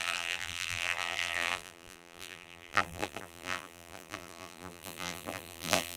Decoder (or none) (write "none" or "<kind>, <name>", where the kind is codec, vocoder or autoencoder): vocoder, BigVGAN v2